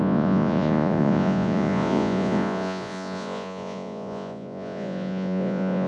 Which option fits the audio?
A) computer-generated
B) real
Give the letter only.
A